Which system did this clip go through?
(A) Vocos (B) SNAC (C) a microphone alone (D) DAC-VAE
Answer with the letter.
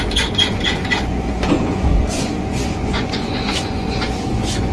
A